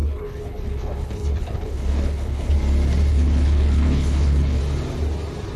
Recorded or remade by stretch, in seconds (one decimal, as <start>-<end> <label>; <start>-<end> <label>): 0.0-2.5 remade; 2.5-3.1 recorded; 3.1-4.6 remade; 4.6-5.6 recorded